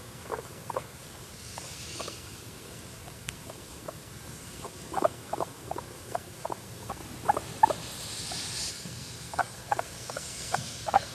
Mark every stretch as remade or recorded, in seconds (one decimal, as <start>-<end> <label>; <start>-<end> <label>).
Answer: 0.0-7.0 remade; 7.0-8.7 recorded; 8.7-11.1 remade